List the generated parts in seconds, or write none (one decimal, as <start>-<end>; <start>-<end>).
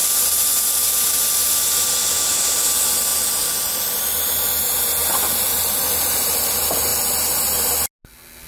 0.0-0.5; 5.0-6.5